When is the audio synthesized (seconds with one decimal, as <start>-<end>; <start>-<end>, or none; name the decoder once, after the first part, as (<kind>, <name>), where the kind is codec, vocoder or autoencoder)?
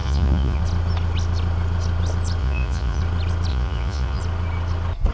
0.0-0.6 (vocoder, Vocos); 2.4-3.0; 3.5-4.2